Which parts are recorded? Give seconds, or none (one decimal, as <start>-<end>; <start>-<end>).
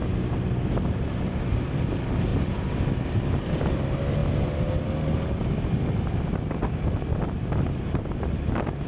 0.0-8.9